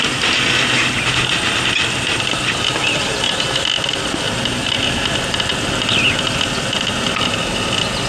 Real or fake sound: real